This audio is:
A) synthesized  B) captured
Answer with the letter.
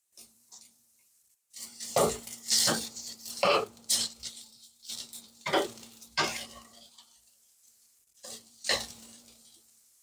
A